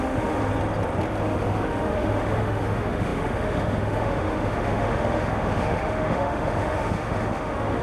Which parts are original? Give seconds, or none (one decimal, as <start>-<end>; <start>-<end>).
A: 0.5-1.2